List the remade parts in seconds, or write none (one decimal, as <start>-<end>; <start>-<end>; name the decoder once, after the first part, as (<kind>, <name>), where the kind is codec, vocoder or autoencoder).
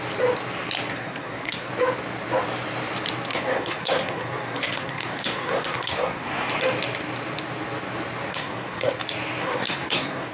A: 0.9-1.7 (codec, SNAC); 3.3-6.5; 8.3-8.9; 9.4-10.3